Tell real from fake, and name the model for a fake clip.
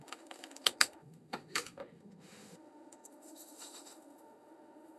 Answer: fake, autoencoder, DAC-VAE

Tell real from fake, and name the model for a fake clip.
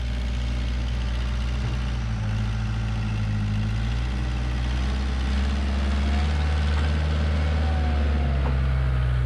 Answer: real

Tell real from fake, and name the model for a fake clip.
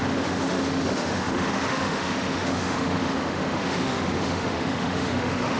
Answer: fake, autoencoder, DAC-VAE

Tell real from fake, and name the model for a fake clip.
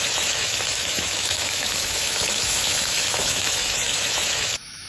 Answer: fake, autoencoder, DAC-VAE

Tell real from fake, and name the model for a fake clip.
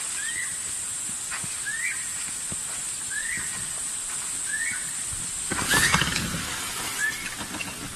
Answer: real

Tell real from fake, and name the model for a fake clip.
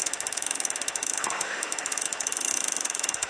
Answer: fake, autoencoder, DAC-VAE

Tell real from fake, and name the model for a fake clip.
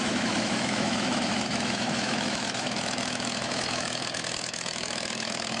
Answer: fake, autoencoder, DAC-VAE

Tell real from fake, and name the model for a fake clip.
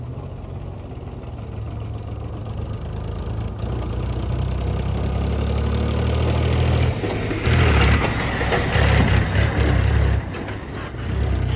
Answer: real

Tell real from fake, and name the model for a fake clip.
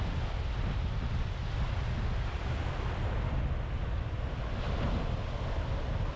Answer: real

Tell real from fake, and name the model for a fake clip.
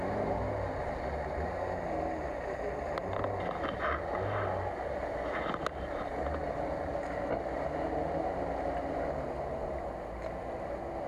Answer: real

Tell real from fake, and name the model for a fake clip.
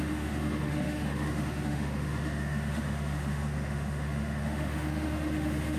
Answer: fake, autoencoder, DAC-VAE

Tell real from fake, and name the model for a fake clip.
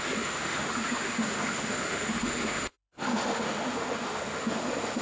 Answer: fake, autoencoder, DAC-VAE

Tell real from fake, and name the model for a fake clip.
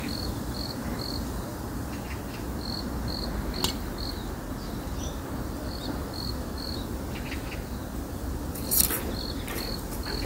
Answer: real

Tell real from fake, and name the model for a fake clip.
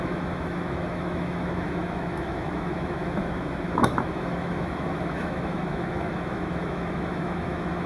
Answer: fake, autoencoder, DAC-VAE